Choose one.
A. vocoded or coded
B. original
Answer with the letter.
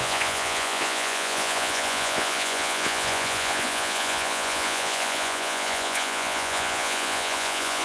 A